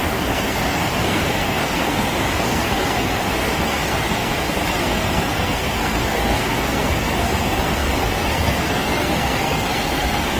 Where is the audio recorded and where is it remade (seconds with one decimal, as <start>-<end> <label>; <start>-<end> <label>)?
0.0-10.4 remade